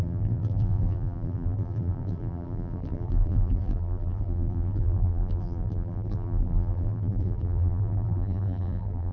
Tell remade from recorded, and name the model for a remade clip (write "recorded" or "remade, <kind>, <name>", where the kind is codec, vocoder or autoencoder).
remade, vocoder, BigVGAN v2